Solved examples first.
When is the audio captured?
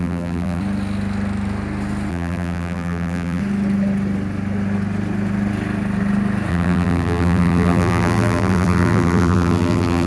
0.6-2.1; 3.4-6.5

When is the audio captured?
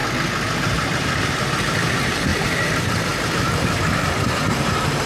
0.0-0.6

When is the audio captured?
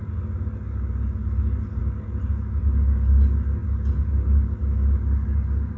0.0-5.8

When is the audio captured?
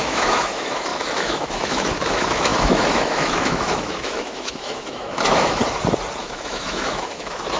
5.6-6.2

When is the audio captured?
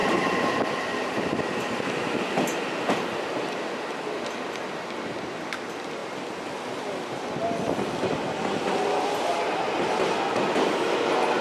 1.4-11.4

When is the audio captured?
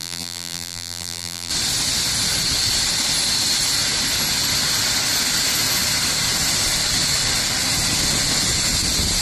1.5-9.2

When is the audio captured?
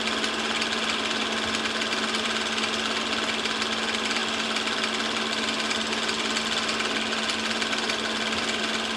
0.0-9.0